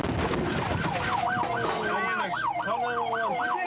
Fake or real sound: real